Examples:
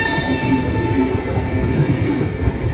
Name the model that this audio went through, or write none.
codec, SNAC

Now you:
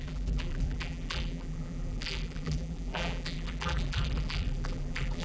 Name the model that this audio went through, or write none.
vocoder, BigVGAN v2